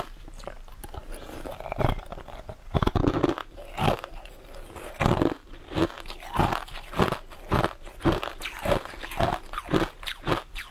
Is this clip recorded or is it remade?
recorded